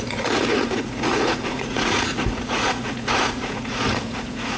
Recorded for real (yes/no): no